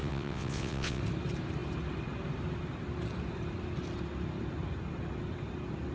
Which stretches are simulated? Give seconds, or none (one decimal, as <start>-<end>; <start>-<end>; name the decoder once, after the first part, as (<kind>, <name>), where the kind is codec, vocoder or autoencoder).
0.0-1.0 (vocoder, WaveNeXt)